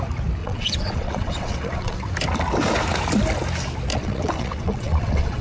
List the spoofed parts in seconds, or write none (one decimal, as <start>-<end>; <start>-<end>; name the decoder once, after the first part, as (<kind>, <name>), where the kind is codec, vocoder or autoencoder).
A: 0.4-2.1 (vocoder, WaveNeXt); 3.9-5.4